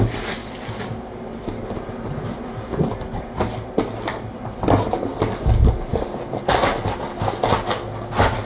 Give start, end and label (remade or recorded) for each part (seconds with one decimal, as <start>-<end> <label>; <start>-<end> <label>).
0.0-8.4 recorded